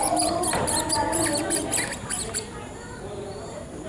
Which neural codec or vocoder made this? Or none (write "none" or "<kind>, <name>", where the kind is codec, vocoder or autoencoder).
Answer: none